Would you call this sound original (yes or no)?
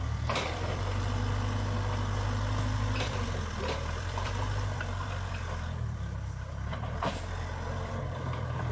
no